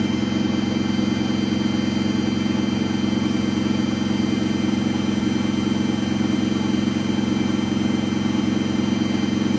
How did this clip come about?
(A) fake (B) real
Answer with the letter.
B